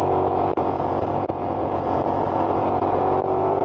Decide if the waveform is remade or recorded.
remade